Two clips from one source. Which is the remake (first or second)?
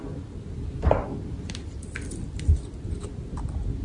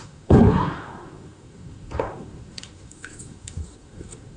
second